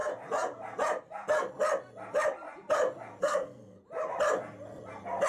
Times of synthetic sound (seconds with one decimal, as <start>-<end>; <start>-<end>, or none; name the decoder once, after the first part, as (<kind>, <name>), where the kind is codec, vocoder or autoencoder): 3.2-3.8 (codec, SNAC)